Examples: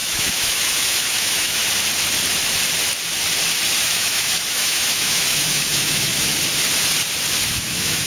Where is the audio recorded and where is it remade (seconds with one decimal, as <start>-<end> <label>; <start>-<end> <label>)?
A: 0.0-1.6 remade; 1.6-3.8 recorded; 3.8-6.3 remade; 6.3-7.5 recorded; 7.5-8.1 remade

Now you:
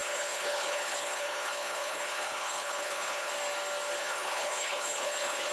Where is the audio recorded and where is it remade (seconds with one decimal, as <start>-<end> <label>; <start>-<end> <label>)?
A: 0.0-3.3 remade; 3.3-4.0 recorded; 4.0-5.5 remade

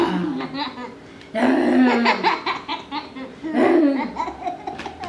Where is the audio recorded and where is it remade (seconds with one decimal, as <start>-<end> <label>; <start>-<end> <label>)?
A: 0.0-5.1 recorded